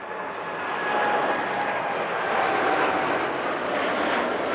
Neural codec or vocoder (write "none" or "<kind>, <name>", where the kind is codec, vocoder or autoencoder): none